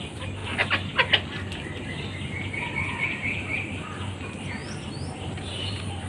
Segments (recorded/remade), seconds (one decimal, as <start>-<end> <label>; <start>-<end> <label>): 0.0-4.6 recorded; 4.6-6.1 remade

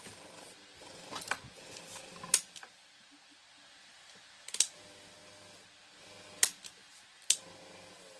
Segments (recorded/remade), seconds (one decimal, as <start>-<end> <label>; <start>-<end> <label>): 0.0-8.2 recorded

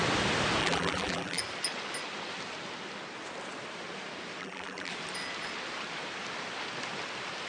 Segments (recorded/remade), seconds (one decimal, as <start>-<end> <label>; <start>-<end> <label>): 0.0-0.6 recorded; 0.6-1.4 remade; 1.4-4.4 recorded; 4.4-4.9 remade; 4.9-7.5 recorded

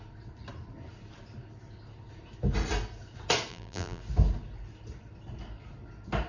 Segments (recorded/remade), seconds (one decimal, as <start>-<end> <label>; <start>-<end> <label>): 0.0-3.5 recorded; 3.5-4.0 remade; 4.0-6.3 recorded

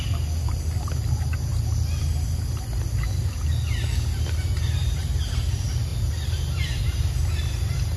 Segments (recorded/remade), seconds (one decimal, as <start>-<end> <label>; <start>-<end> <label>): 0.0-8.0 recorded

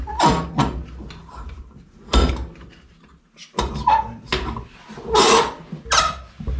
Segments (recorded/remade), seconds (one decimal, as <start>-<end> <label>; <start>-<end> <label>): 0.0-1.2 recorded; 1.2-2.3 remade; 2.3-6.6 recorded